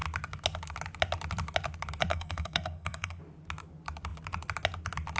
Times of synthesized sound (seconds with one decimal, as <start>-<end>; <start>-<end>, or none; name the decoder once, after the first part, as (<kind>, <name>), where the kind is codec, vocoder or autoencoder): 2.1-3.2 (codec, SNAC)